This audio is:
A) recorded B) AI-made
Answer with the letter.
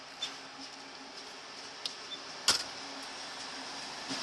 A